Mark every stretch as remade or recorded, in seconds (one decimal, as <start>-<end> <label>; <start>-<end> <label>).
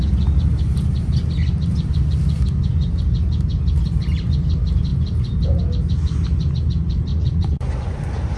0.0-7.1 recorded; 7.1-8.0 remade; 8.0-8.4 recorded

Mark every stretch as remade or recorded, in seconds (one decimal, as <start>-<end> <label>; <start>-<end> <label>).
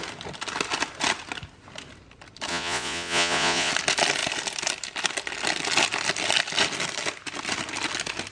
0.0-2.5 recorded; 2.5-3.7 remade; 3.7-8.3 recorded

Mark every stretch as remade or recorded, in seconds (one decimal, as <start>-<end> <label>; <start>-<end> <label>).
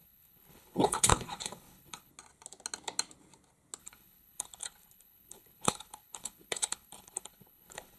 0.0-2.1 remade; 2.1-3.8 recorded; 3.8-8.0 remade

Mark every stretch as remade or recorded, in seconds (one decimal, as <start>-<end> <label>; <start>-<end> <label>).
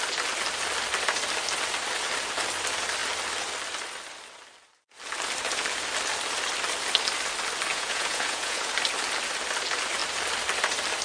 0.0-7.7 recorded; 7.7-8.7 remade; 8.7-11.0 recorded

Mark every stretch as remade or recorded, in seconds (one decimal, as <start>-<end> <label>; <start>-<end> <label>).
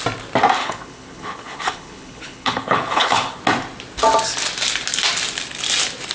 0.0-0.6 recorded; 0.6-3.4 remade; 3.4-6.1 recorded